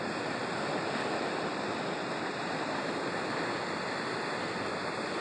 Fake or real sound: fake